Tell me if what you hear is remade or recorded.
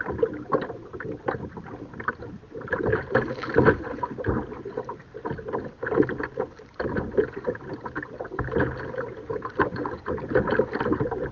recorded